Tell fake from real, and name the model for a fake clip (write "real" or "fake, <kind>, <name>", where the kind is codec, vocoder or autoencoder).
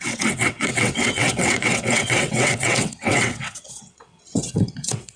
fake, vocoder, WaveNeXt